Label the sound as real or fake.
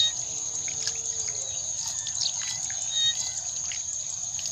real